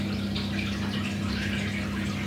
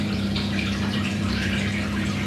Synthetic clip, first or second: second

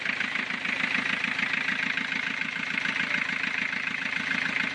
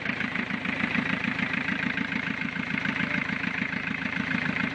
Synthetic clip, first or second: second